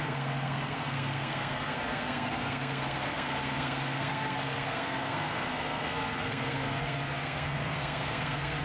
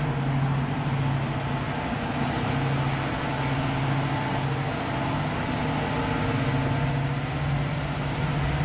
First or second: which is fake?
first